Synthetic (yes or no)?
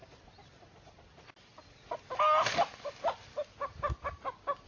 no